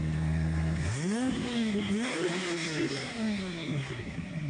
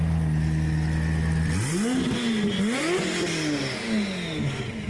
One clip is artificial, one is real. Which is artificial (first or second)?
first